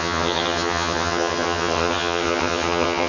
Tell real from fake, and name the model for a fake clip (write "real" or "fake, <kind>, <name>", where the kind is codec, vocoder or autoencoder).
fake, vocoder, HiFi-GAN